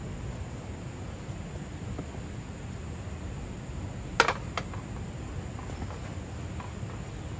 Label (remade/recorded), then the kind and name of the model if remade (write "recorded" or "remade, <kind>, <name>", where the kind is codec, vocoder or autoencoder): recorded